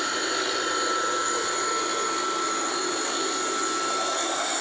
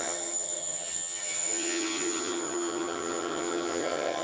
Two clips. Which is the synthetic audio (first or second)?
second